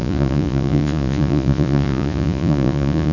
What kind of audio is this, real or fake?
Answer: fake